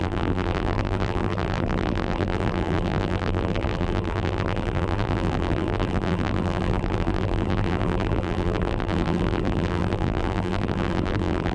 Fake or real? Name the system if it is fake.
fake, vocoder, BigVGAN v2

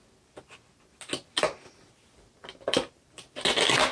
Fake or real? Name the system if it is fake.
real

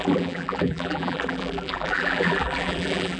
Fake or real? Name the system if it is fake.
fake, vocoder, BigVGAN v2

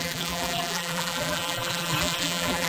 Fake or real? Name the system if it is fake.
fake, vocoder, BigVGAN v2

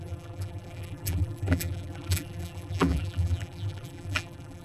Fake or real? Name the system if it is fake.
fake, vocoder, BigVGAN v2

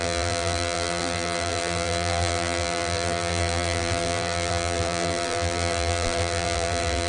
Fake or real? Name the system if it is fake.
fake, vocoder, BigVGAN v2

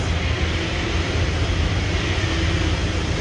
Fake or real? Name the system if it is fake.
real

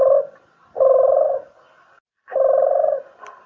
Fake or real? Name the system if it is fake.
real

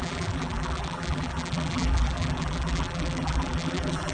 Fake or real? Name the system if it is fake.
fake, vocoder, BigVGAN v2